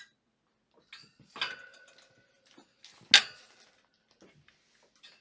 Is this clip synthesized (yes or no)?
no